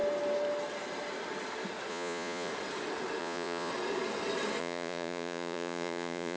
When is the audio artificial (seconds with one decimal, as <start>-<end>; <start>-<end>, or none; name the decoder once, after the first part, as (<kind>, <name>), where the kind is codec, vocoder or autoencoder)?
1.9-2.5 (vocoder, Vocos); 3.2-3.7; 4.6-6.4